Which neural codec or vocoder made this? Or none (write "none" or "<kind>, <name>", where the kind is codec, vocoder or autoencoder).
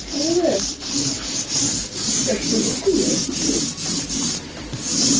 vocoder, BigVGAN v2